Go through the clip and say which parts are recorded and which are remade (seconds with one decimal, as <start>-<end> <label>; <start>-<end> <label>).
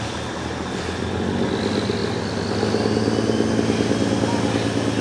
0.0-5.0 recorded